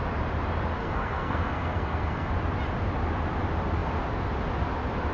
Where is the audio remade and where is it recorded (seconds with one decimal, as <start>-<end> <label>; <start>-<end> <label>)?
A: 0.0-0.8 recorded; 0.8-2.3 remade; 2.3-5.1 recorded